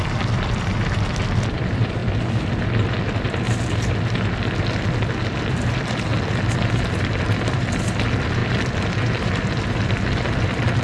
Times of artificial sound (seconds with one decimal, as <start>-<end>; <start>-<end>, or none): 0.0-2.0; 5.5-6.1; 6.7-8.4; 9.2-10.8